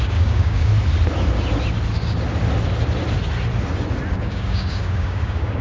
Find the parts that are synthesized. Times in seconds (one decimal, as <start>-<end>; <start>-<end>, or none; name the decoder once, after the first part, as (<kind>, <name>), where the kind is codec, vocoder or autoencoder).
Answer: 0.0-0.7 (codec, DAC); 4.1-5.6